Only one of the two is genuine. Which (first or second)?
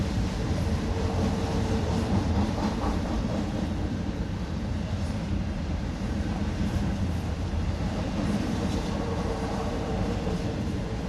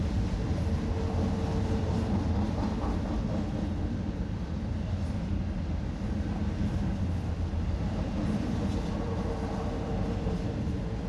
second